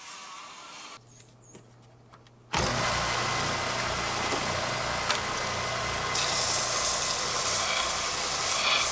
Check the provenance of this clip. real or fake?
real